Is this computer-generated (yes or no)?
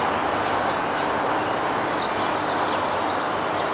no